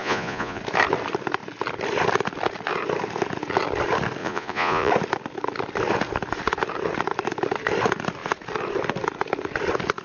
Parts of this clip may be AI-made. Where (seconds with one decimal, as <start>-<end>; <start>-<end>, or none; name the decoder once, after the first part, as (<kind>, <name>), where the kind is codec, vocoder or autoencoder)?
0.0-0.6 (vocoder, Vocos); 4.2-4.9